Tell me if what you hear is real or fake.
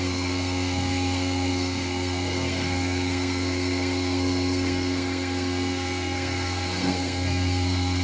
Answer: fake